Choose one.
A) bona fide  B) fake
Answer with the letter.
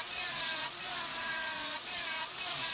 B